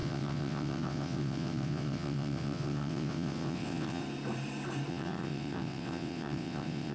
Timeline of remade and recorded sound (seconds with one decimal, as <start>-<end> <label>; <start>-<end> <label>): 0.0-4.0 remade; 4.0-4.9 recorded; 4.9-6.9 remade

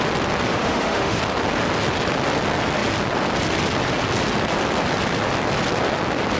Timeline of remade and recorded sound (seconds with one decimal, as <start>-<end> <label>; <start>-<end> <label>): 0.0-0.5 recorded; 0.5-1.2 remade; 1.2-6.4 recorded

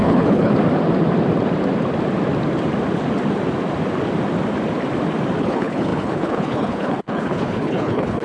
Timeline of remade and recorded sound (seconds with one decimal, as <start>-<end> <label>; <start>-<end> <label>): 0.0-0.5 remade; 0.5-5.4 recorded; 5.4-8.2 remade

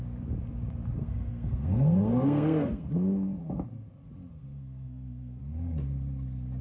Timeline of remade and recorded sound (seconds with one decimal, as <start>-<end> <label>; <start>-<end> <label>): 0.0-1.0 recorded; 1.0-2.9 remade; 2.9-4.3 recorded; 4.3-5.4 remade; 5.4-6.6 recorded

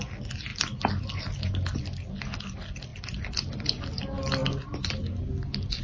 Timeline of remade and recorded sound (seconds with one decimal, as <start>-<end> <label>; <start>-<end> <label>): 0.0-5.8 recorded

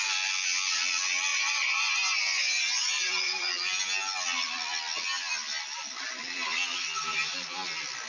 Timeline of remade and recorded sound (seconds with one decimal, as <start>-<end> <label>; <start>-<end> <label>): 0.0-1.3 recorded; 1.3-3.5 remade; 3.5-8.1 recorded